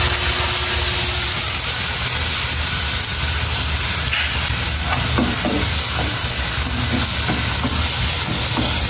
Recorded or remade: recorded